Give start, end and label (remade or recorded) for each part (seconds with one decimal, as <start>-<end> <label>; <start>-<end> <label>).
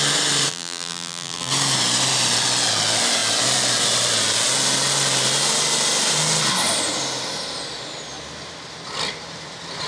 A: 0.0-0.5 recorded; 0.5-1.5 remade; 1.5-9.9 recorded